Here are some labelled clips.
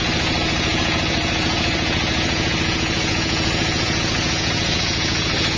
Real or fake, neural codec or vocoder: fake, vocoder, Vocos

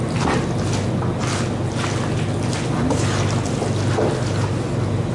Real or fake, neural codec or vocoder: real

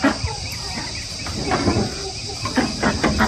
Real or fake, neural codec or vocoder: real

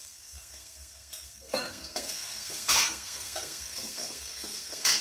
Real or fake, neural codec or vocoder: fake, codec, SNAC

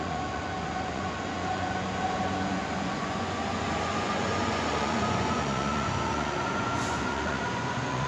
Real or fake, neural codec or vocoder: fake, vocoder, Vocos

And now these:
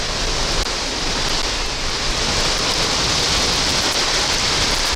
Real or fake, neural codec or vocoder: real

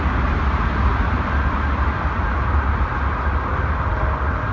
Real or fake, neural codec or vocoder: real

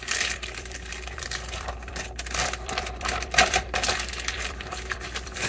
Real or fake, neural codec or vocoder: fake, vocoder, BigVGAN v2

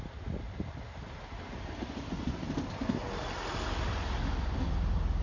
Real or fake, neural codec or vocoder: real